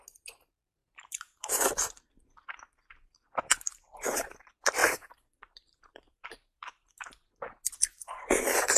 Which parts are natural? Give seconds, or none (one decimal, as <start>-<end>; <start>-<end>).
0.0-0.8; 1.7-4.8; 6.9-8.8